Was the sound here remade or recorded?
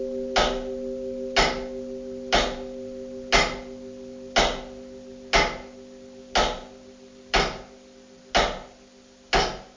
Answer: recorded